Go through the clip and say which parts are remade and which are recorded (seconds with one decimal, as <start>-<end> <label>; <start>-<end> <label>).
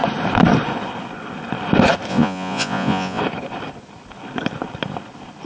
0.0-2.1 recorded; 2.1-3.2 remade; 3.2-5.5 recorded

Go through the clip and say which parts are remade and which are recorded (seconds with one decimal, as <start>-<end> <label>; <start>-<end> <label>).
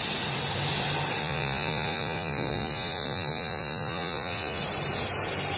0.0-1.2 recorded; 1.2-4.6 remade; 4.6-5.6 recorded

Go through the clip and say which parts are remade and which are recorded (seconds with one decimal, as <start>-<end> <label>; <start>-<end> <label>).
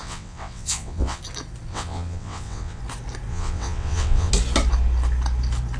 0.0-1.2 remade; 1.2-1.7 recorded; 1.7-2.8 remade; 2.8-3.3 recorded; 3.3-4.3 remade; 4.3-5.8 recorded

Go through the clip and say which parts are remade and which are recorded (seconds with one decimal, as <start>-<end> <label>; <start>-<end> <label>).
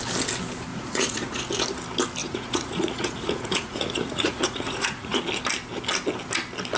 0.0-0.7 recorded; 0.7-1.4 remade; 1.4-2.2 recorded; 2.2-5.2 remade; 5.2-6.8 recorded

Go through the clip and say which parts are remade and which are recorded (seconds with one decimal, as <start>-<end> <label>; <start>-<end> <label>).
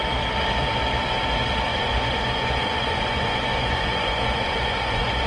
0.0-1.7 recorded; 1.7-5.3 remade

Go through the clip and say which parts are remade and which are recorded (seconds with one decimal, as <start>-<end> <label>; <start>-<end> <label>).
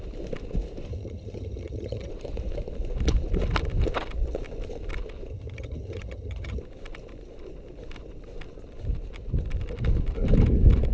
0.0-0.9 recorded; 0.9-2.1 remade; 2.1-5.3 recorded; 5.3-6.6 remade; 6.6-10.9 recorded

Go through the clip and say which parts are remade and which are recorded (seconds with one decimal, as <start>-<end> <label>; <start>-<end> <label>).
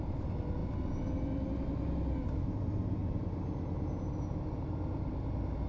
0.0-5.7 recorded